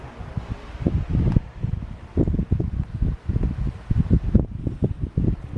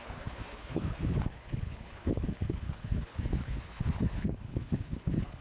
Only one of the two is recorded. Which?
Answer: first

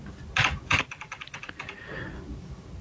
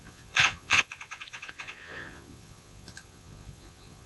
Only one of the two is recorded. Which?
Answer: first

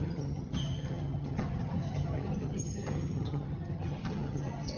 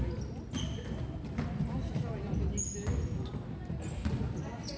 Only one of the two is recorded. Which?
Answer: second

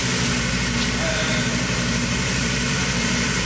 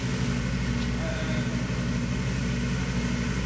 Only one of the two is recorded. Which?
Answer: second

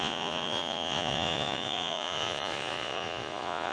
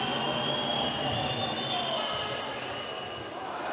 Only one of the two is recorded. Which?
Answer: second